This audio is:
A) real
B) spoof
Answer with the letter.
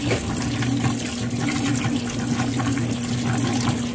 A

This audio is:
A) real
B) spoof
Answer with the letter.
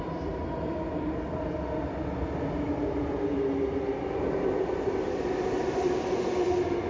A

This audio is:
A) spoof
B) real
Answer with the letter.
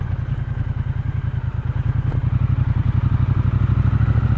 B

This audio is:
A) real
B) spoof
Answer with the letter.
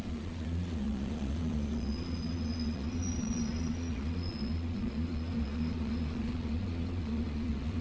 B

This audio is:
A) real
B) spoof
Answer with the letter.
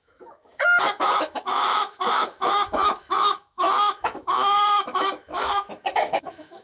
B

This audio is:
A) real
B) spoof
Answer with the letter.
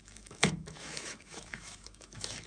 B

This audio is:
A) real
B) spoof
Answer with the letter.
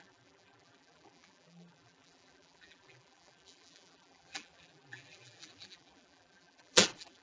B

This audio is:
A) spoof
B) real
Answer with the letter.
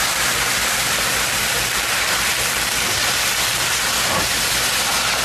B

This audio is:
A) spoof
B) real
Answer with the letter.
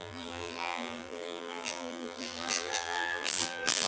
A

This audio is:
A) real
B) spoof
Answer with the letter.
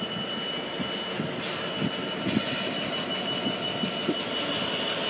A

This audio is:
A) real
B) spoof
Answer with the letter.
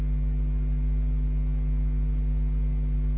A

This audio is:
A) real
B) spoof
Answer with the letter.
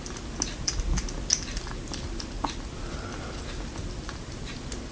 A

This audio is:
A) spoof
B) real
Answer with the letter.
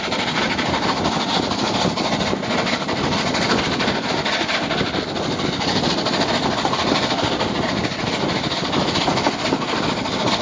B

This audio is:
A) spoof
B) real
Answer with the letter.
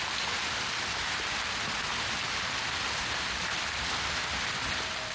B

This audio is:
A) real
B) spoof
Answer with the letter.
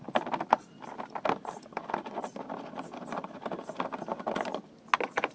A